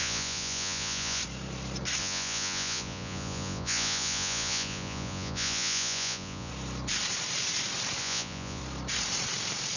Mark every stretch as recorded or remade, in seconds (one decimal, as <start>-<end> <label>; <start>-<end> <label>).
0.0-1.2 remade; 1.2-2.0 recorded; 2.0-6.5 remade; 6.5-8.0 recorded; 8.0-8.6 remade; 8.6-9.8 recorded